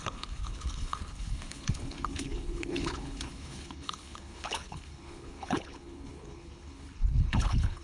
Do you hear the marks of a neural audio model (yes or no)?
yes